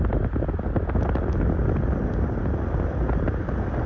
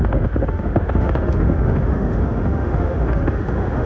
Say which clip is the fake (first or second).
second